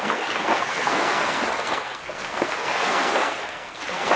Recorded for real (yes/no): no